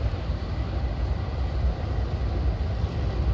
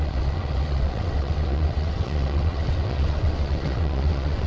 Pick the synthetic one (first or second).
second